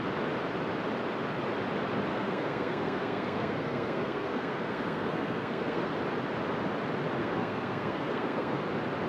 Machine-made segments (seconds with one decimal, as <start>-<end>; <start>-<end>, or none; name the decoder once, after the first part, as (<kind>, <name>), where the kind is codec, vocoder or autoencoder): 2.1-5.9 (codec, SNAC); 7.2-8.6